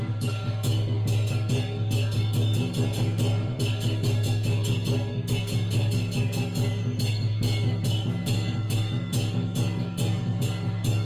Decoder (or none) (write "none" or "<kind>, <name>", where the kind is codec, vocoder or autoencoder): codec, DAC